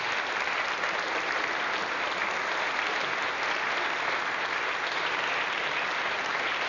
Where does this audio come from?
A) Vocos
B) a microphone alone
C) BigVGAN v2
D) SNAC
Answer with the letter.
B